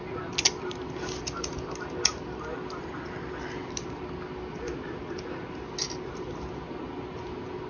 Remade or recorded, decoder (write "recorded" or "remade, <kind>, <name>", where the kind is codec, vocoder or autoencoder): recorded